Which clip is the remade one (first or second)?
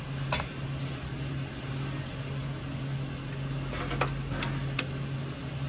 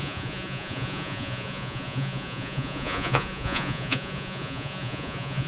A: second